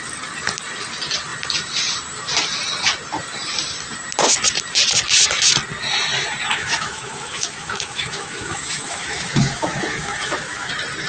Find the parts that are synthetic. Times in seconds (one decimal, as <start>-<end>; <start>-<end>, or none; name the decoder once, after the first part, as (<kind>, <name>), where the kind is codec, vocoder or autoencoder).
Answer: 6.5-10.7 (autoencoder, DAC-VAE)